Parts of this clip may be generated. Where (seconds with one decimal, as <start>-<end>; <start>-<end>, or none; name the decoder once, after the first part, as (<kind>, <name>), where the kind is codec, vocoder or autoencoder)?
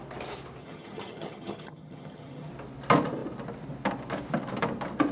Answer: 0.6-2.5 (vocoder, HiFi-GAN)